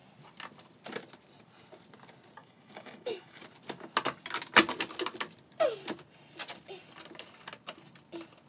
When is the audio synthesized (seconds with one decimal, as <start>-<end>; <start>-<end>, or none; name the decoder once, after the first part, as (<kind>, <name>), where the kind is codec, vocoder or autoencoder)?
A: 2.4-3.4 (autoencoder, DAC-VAE)